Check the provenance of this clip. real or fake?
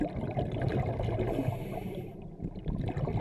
real